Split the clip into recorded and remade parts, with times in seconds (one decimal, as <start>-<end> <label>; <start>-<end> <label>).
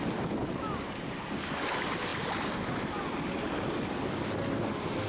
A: 0.0-5.1 recorded